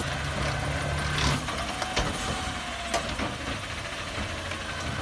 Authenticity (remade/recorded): recorded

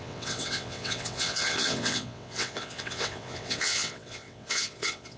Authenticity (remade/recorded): remade